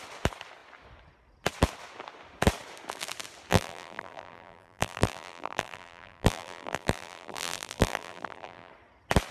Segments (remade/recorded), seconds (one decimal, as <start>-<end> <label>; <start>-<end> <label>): 0.0-3.5 recorded; 3.5-8.7 remade; 8.7-9.3 recorded